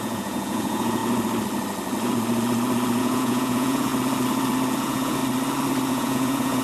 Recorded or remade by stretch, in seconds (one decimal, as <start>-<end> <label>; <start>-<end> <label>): 0.0-1.0 remade; 1.0-3.0 recorded; 3.0-3.9 remade; 3.9-4.8 recorded; 4.8-5.2 remade; 5.2-5.9 recorded; 5.9-6.6 remade

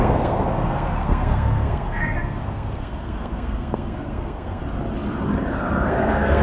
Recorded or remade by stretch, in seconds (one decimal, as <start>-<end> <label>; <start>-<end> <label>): 0.0-4.6 remade; 4.6-5.5 recorded; 5.5-6.4 remade

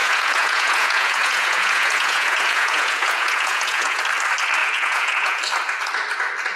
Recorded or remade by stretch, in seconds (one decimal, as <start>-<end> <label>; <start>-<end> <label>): 0.0-4.0 remade; 4.0-4.6 recorded; 4.6-5.4 remade; 5.4-6.6 recorded

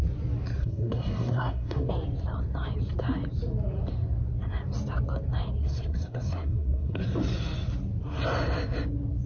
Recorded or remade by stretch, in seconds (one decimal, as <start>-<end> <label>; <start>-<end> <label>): 0.0-0.6 recorded; 0.6-1.9 remade; 1.9-5.6 recorded; 5.6-7.0 remade; 7.0-9.3 recorded

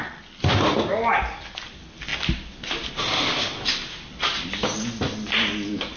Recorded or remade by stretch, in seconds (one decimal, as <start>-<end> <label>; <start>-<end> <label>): 0.0-6.0 recorded

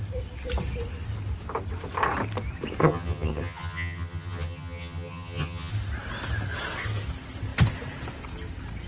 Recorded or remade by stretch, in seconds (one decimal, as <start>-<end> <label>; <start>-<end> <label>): 0.0-2.8 recorded; 2.8-5.7 remade; 5.7-8.9 recorded